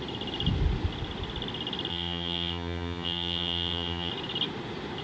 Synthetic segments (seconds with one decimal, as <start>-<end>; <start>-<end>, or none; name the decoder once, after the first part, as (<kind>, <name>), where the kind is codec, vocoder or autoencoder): 1.9-4.1 (vocoder, HiFi-GAN)